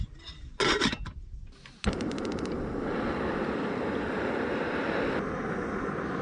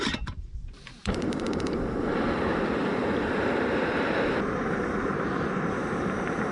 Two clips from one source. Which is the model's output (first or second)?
second